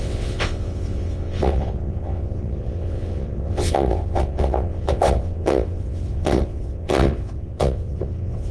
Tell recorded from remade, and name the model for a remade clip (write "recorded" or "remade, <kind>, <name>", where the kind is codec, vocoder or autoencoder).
remade, vocoder, WaveNeXt